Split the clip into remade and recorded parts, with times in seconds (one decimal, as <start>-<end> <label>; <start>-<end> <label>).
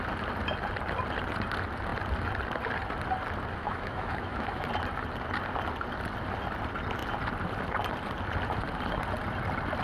0.0-3.6 recorded; 3.6-4.6 remade; 4.6-9.8 recorded